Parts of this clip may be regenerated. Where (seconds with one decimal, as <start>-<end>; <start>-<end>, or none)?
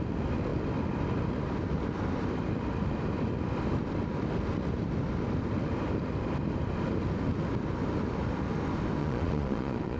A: 9.0-10.0